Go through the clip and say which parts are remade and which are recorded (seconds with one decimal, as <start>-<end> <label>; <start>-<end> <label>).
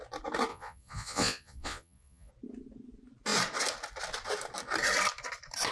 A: 0.0-0.5 recorded; 0.5-2.3 remade; 2.3-5.7 recorded